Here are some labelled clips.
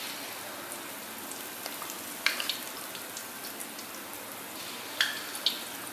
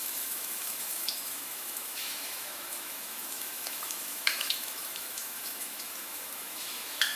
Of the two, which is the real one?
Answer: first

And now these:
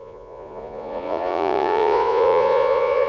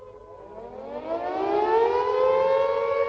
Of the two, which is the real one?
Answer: second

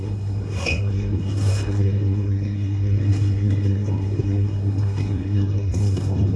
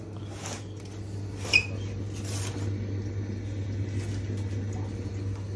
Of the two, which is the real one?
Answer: second